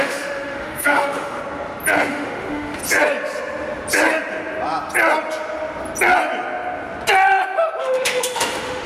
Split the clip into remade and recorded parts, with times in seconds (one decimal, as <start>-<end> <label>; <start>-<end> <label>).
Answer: 0.0-1.4 remade; 1.4-2.1 recorded; 2.1-2.8 remade; 2.8-7.8 recorded; 7.8-8.9 remade